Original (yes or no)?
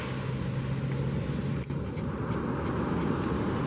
yes